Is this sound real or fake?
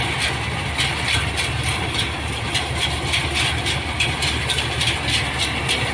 real